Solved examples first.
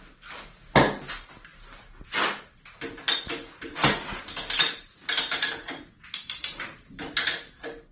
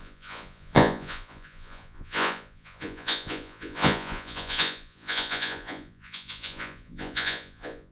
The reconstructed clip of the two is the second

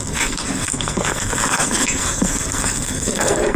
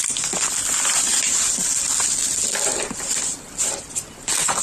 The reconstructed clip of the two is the first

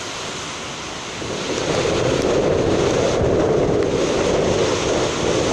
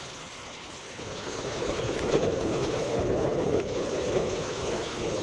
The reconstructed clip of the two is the second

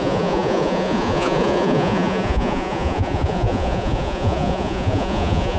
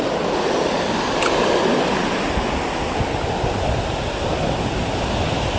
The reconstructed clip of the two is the first